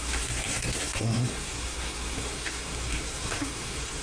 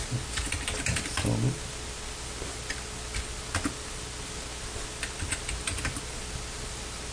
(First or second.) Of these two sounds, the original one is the second